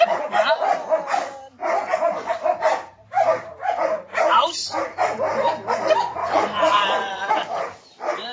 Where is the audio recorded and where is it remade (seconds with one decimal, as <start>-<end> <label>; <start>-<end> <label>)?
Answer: 0.0-3.6 recorded; 3.6-4.2 remade; 4.2-6.2 recorded; 6.2-7.3 remade; 7.3-8.3 recorded